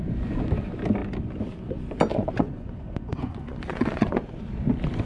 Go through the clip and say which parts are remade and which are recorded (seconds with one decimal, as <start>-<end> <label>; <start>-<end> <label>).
0.0-2.1 recorded; 2.1-4.4 remade; 4.4-5.1 recorded